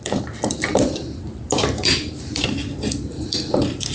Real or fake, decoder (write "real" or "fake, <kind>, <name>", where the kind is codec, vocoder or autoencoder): fake, vocoder, BigVGAN v2